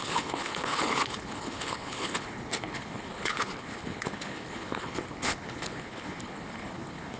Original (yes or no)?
no